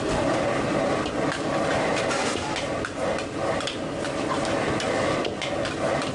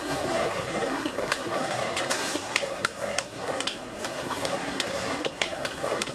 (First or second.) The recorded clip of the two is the first